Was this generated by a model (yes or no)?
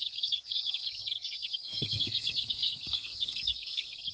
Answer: yes